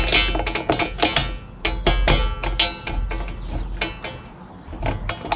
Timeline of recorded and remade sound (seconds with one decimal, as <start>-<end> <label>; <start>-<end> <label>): 0.0-5.4 recorded

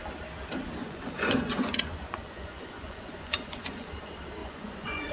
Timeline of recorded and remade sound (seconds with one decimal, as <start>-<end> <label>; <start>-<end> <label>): 0.0-0.8 recorded; 0.8-3.9 remade; 3.9-4.4 recorded; 4.4-5.1 remade

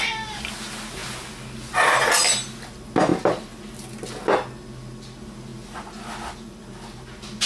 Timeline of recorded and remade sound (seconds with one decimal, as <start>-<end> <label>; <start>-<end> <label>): 0.0-3.1 recorded; 3.1-3.6 remade; 3.6-7.5 recorded

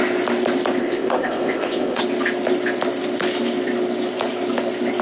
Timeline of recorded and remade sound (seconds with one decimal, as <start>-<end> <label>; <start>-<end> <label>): 0.0-0.8 recorded; 0.8-2.0 remade; 2.0-5.0 recorded

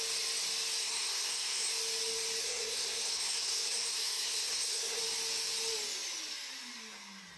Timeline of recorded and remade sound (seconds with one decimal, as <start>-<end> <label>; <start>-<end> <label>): 0.0-0.8 recorded; 0.8-1.7 remade; 1.7-2.4 recorded; 2.4-5.0 remade; 5.0-7.4 recorded

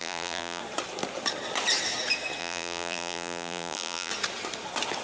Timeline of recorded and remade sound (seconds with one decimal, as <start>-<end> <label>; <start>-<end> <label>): 0.0-0.6 remade; 0.6-2.4 recorded; 2.4-4.1 remade; 4.1-5.0 recorded

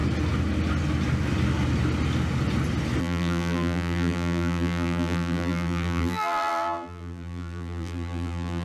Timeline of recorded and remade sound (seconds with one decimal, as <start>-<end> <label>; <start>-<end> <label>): 0.0-3.0 recorded; 3.0-8.6 remade